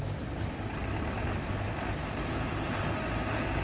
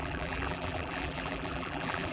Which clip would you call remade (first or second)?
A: second